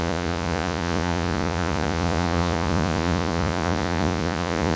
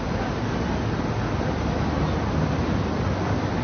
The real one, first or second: second